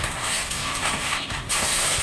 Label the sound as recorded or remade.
remade